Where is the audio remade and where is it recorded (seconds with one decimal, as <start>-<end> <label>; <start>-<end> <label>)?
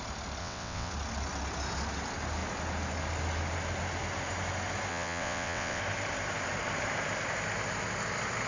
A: 0.0-0.4 recorded; 0.4-0.9 remade; 0.9-4.9 recorded; 4.9-5.8 remade; 5.8-8.5 recorded